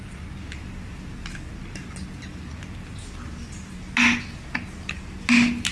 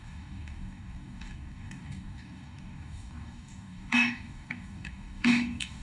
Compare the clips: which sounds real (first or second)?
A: first